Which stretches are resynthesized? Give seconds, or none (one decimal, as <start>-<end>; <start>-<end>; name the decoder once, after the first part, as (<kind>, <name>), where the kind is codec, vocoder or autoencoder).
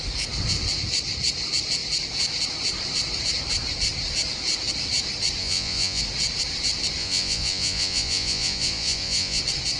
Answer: 5.4-6.0 (vocoder, Vocos); 7.0-9.4